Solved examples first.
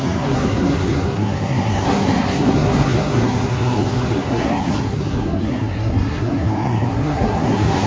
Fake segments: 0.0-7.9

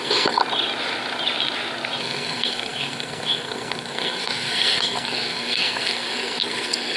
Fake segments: 0.0-0.4; 2.0-7.0

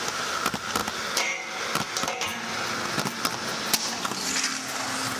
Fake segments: none

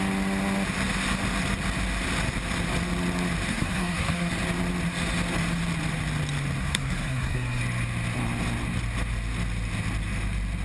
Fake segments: 3.5-4.3; 6.6-7.6

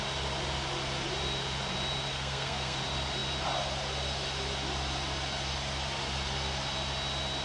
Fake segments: 2.1-2.8